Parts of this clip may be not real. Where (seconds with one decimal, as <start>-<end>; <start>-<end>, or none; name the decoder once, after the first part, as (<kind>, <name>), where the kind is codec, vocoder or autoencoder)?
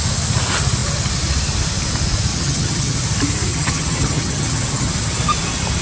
2.3-3.0 (vocoder, HiFi-GAN); 3.5-4.9